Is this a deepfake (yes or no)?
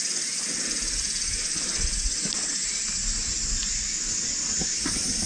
no